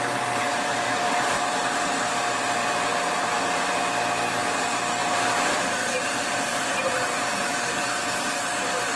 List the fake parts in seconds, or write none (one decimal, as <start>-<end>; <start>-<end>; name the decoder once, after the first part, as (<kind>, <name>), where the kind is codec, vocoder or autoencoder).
0.5-2.1 (vocoder, BigVGAN v2); 2.9-3.8; 5.0-6.2